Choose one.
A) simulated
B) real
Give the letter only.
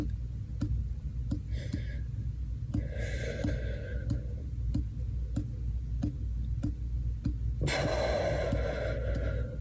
B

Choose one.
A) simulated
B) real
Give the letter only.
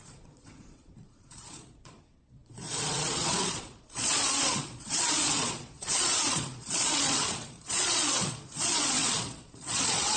A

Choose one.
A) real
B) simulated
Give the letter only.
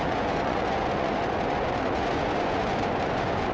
B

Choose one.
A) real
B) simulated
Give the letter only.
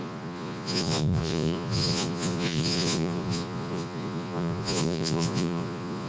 B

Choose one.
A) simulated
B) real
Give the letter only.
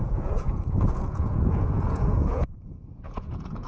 A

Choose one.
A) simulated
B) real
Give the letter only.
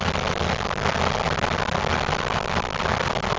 B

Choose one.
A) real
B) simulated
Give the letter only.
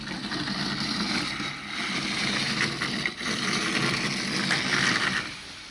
A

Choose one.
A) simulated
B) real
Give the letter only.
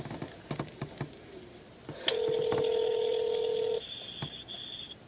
B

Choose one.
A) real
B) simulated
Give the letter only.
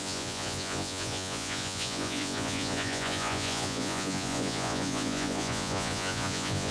B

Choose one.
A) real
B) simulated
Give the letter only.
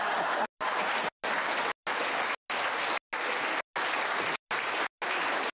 A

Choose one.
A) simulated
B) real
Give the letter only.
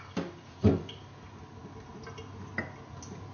B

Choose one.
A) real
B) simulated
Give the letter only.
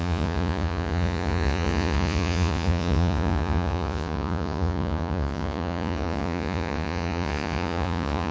B